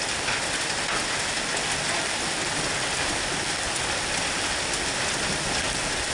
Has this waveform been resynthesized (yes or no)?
no